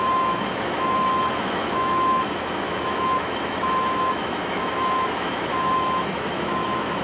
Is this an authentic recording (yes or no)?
no